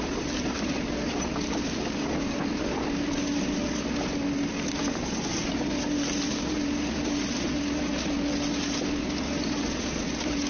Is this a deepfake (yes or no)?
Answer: no